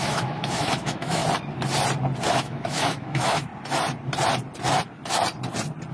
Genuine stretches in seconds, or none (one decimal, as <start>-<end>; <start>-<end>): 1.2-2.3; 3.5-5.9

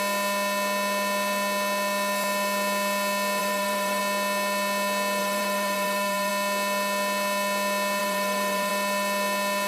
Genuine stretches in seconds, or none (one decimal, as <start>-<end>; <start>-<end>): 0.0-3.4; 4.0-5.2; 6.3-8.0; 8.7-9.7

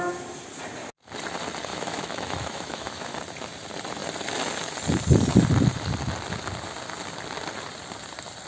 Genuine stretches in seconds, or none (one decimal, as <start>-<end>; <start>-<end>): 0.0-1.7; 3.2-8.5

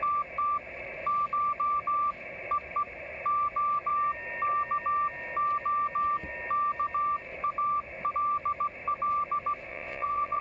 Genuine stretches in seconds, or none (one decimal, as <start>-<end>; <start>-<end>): 0.0-9.7

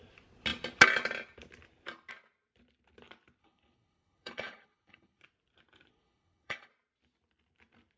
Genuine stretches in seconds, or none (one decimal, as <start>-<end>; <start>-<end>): 0.0-3.4; 5.2-5.9; 6.7-8.0

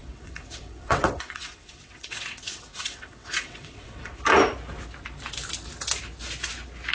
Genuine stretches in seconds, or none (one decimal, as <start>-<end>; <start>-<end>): 4.1-6.9

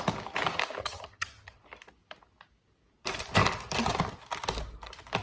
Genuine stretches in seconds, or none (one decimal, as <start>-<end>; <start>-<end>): 0.0-0.8; 1.6-5.2

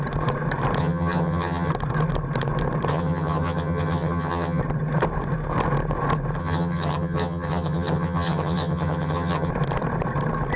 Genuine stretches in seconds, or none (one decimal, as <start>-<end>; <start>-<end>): 0.0-0.8; 1.7-2.9; 4.6-6.4; 9.5-10.6